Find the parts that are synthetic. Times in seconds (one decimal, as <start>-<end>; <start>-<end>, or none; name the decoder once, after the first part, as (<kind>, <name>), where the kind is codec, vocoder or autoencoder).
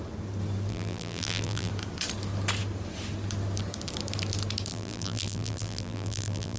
0.7-1.7 (vocoder, BigVGAN v2); 4.7-6.6